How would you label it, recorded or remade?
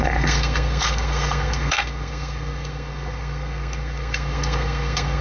remade